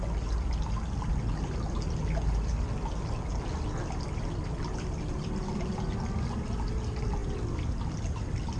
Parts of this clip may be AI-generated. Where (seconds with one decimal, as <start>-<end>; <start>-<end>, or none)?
none